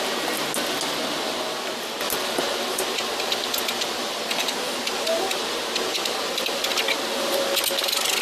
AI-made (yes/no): no